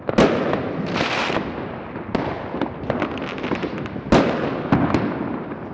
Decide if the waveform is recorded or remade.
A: recorded